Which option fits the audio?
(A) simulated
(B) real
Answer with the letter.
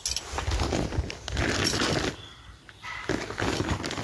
B